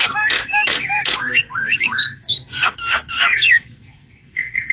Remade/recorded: remade